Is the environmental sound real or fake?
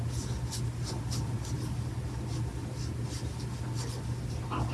real